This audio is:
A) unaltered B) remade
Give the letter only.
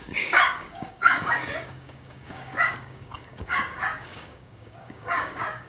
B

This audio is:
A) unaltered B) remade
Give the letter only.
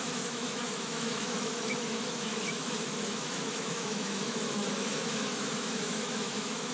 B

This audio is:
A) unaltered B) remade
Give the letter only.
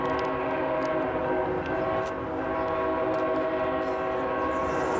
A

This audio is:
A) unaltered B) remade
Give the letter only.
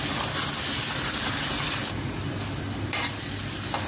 A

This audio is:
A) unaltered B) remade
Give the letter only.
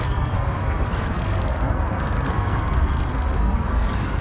B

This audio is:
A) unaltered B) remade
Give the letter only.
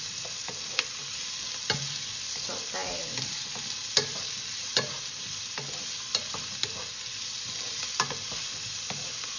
A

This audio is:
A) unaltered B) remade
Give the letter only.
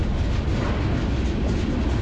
A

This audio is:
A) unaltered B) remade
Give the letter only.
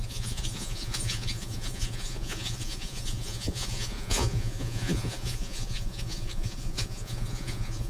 B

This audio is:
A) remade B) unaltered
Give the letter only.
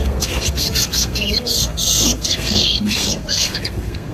A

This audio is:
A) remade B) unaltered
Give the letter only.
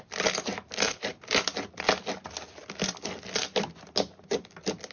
B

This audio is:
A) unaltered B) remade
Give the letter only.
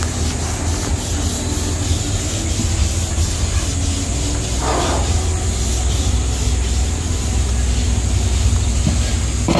A